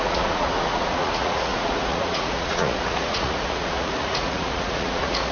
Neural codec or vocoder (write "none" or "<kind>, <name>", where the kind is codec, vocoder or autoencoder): vocoder, Vocos